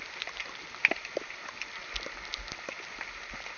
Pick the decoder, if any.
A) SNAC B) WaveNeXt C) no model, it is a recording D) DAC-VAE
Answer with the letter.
C